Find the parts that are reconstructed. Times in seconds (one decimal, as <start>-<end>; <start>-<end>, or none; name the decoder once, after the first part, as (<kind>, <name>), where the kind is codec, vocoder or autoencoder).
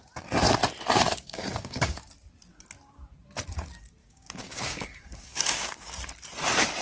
0.9-2.1 (codec, DAC); 4.0-6.0